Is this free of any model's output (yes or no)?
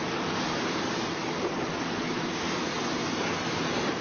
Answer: yes